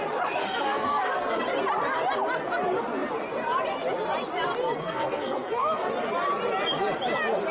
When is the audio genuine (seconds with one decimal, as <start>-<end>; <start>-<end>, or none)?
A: 0.0-0.4; 1.4-4.8; 5.9-7.5